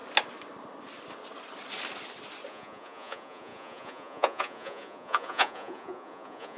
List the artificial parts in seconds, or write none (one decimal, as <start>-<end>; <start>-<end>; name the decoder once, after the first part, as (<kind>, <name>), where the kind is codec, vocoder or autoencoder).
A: 2.5-6.6 (vocoder, Vocos)